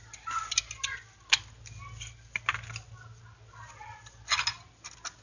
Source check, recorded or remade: recorded